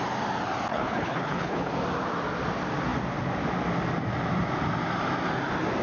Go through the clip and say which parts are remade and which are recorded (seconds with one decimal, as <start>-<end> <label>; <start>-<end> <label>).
0.0-0.7 recorded; 0.7-1.7 remade; 1.7-5.8 recorded